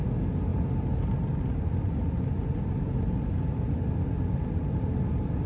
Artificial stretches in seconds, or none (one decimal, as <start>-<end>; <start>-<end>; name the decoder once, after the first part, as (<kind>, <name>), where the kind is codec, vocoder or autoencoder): none